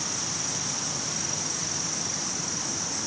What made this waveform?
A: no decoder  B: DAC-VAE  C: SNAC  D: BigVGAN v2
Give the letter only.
A